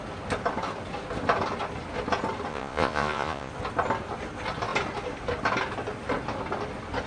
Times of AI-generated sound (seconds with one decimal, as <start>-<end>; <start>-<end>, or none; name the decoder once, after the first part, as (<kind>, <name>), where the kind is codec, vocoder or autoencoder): 2.5-3.5 (vocoder, Vocos)